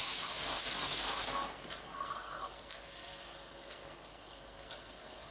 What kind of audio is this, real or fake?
fake